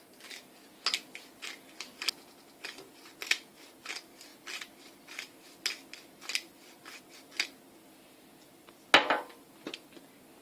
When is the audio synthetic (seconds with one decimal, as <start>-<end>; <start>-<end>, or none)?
none